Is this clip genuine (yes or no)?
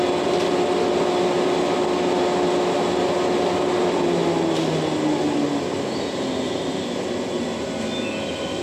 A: yes